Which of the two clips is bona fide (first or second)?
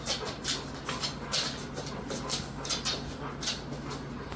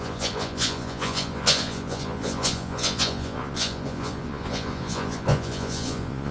first